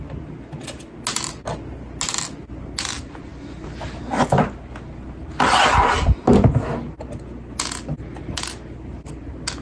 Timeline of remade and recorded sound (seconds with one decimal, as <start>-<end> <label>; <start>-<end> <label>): 0.0-9.6 recorded